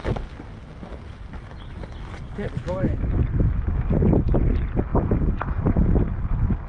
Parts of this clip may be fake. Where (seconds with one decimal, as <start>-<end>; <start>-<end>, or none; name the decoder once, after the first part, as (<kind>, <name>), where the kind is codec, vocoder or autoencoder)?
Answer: 2.6-3.2 (autoencoder, DAC-VAE)